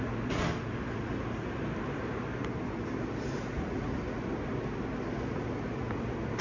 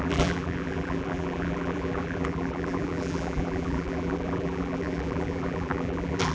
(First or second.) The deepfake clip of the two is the second